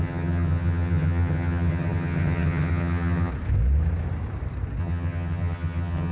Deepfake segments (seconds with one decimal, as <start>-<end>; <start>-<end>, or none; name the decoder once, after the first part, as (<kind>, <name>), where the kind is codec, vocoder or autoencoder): 0.0-3.3 (vocoder, HiFi-GAN); 4.8-6.1